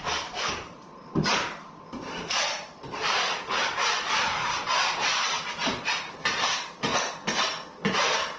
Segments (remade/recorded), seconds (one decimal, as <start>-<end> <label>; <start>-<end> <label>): 0.0-6.9 remade; 6.9-8.4 recorded